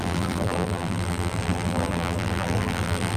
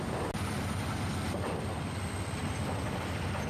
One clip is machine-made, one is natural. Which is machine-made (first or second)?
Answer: first